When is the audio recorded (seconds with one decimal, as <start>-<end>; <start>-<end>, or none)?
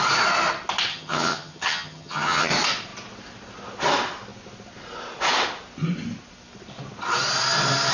0.0-0.9; 2.5-7.9